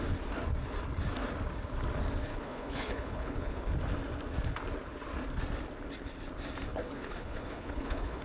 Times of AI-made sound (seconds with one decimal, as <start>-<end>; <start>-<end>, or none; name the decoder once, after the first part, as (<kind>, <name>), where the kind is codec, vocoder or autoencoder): 2.3-3.7 (codec, HILCodec); 6.7-8.2